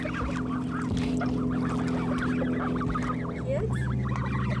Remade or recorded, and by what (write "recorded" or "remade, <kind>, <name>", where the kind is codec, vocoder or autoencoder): recorded